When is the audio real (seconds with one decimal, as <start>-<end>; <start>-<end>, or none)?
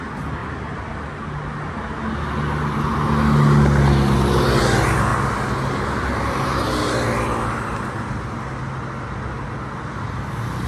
0.0-10.7